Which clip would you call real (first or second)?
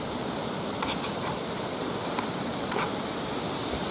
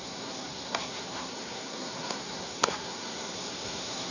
first